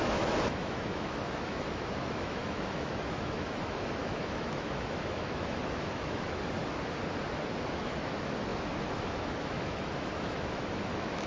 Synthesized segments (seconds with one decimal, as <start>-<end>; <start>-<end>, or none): 0.0-6.6; 7.7-11.3